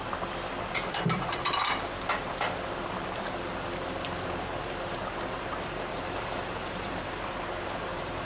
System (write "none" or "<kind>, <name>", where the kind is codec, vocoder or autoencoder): vocoder, BigVGAN v2